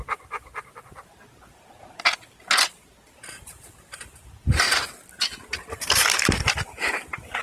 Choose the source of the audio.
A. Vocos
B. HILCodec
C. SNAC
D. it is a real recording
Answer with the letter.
D